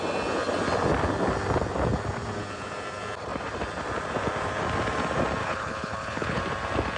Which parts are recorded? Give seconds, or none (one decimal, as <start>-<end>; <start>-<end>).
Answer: 0.0-5.4; 6.4-7.0